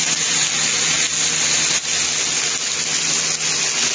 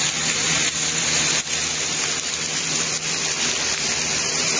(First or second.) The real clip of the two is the first